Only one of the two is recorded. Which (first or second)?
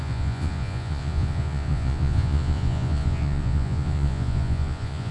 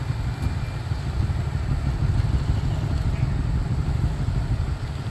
second